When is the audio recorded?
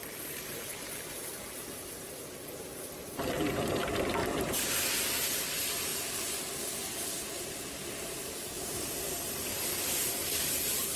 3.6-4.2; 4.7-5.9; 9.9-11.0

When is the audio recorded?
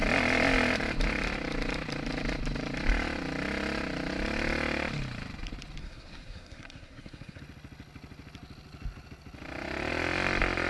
0.0-5.8; 7.4-10.7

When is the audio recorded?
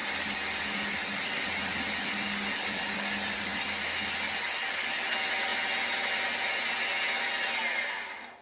0.0-8.4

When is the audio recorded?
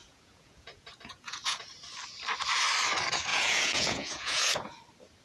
1.7-3.3; 4.8-5.2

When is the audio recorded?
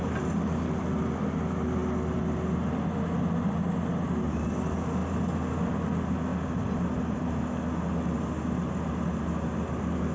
0.0-10.1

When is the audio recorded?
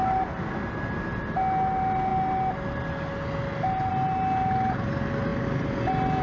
0.0-6.2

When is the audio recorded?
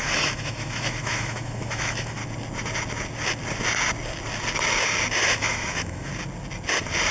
2.2-5.2; 6.1-7.1